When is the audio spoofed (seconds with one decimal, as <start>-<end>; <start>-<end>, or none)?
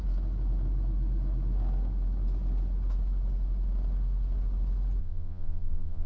5.0-6.1